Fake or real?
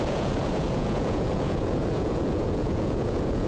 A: fake